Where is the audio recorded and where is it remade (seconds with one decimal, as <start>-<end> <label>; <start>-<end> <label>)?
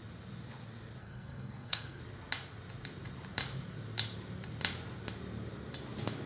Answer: 0.0-1.0 recorded; 1.0-2.0 remade; 2.0-6.3 recorded